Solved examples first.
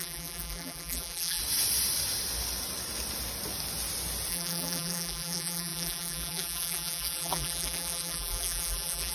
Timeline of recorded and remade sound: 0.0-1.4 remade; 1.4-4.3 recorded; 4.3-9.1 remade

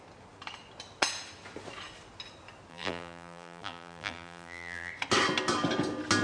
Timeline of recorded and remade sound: 0.0-2.7 recorded; 2.7-4.9 remade; 4.9-6.2 recorded

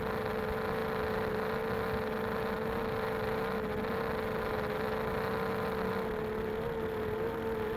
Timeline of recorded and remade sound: 0.0-7.8 recorded

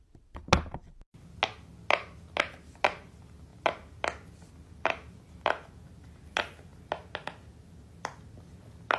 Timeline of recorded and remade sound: 0.0-9.0 recorded

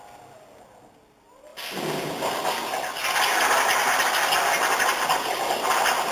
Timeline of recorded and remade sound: 0.0-6.1 recorded

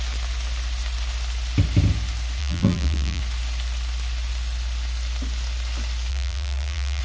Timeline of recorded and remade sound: 0.0-2.4 recorded; 2.4-3.2 remade; 3.2-6.1 recorded; 6.1-7.0 remade

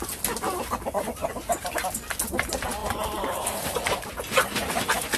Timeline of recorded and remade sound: 0.0-2.8 recorded; 2.8-4.1 remade; 4.1-5.2 recorded